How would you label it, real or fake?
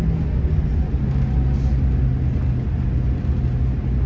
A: real